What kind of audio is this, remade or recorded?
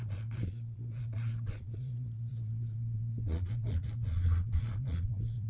remade